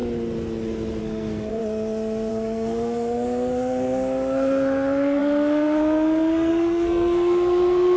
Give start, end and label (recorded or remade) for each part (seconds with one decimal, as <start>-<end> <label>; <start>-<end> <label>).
0.0-1.0 recorded; 1.0-1.6 remade; 1.6-2.3 recorded; 2.3-8.0 remade